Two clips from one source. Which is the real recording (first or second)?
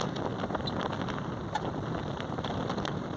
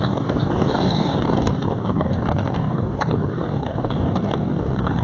first